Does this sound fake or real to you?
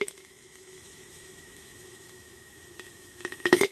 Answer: fake